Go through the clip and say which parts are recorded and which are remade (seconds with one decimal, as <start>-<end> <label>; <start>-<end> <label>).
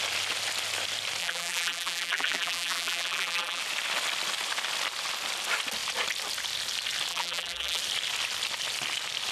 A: 0.0-1.2 recorded; 1.2-3.6 remade; 3.6-7.1 recorded; 7.1-7.8 remade; 7.8-9.3 recorded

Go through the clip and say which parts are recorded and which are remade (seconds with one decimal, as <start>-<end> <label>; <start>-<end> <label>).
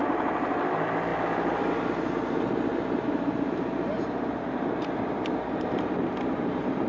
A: 0.0-0.6 remade; 0.6-2.7 recorded; 2.7-5.9 remade; 5.9-6.9 recorded